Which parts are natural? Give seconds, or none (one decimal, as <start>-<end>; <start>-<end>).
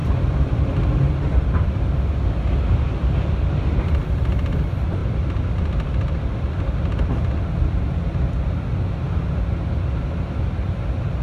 0.0-11.2